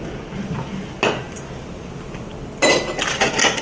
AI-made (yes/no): no